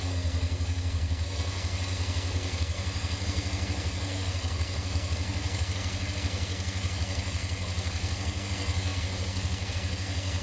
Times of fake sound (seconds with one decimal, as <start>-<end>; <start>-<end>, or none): 0.0-10.4